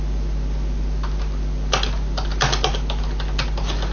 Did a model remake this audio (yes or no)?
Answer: no